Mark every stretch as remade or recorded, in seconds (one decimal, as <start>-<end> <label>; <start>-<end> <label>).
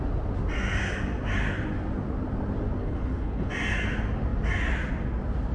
0.0-2.8 recorded; 2.8-3.5 remade; 3.5-5.5 recorded